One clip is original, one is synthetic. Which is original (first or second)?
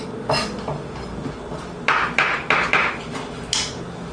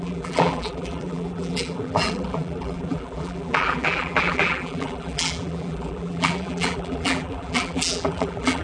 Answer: first